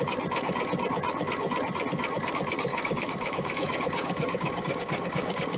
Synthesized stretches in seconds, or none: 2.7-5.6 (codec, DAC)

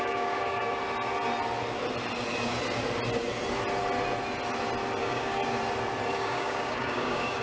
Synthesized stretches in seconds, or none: 0.0-0.6 (codec, DAC); 5.0-5.4; 6.1-7.4

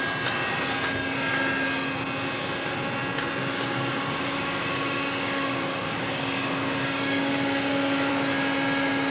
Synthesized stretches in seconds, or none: 3.4-8.1 (codec, DAC)

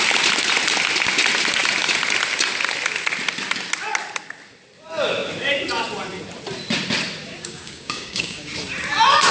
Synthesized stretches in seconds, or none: 7.2-8.5 (codec, DAC)